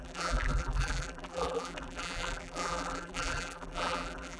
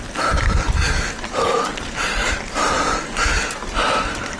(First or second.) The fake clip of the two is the first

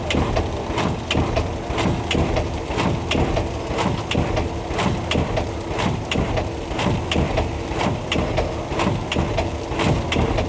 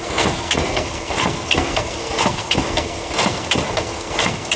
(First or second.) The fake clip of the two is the second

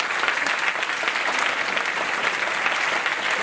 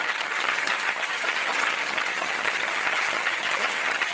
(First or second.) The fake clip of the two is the second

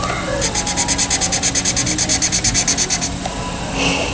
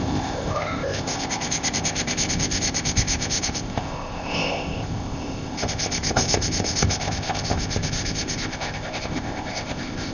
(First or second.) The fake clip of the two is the second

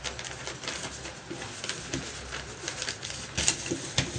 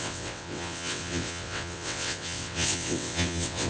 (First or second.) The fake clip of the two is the second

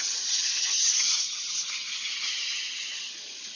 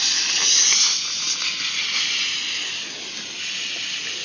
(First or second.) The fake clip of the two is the first